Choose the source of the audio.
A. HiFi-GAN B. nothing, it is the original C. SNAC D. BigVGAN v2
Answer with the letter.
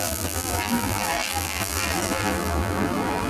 D